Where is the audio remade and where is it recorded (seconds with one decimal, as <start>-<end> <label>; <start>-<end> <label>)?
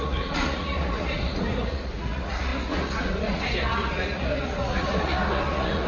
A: 0.0-5.9 remade